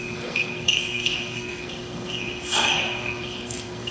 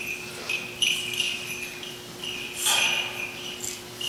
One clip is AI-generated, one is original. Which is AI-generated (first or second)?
first